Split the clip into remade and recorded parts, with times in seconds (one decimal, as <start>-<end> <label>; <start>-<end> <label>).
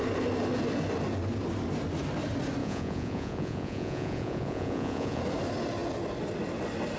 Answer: 0.0-2.6 recorded; 2.6-5.2 remade; 5.2-7.0 recorded